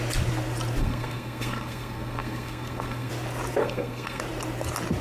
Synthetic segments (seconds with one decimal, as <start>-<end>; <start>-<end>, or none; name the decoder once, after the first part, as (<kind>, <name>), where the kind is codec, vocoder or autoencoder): 0.8-3.1 (codec, SNAC); 3.6-4.2